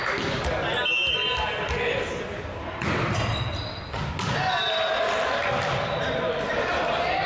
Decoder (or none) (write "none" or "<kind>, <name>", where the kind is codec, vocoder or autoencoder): none